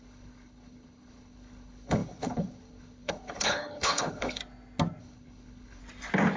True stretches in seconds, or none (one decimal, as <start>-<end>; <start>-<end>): 4.4-5.0; 5.8-6.4